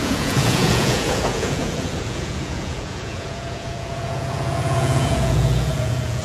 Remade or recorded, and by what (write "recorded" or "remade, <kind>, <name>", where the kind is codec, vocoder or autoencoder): remade, vocoder, Vocos